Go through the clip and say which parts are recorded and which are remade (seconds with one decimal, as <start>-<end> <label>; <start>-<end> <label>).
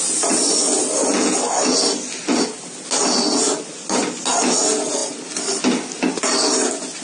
0.0-7.0 recorded